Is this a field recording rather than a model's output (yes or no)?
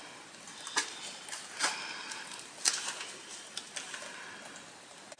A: yes